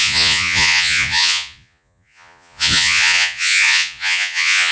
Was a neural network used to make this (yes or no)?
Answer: yes